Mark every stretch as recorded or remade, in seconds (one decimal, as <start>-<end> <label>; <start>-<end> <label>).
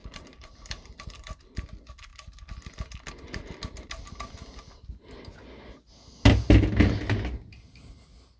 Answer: 0.0-1.7 remade; 1.7-8.4 recorded